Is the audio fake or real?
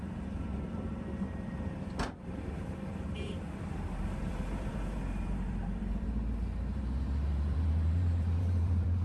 fake